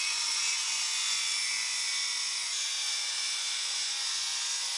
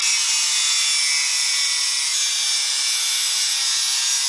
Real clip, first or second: second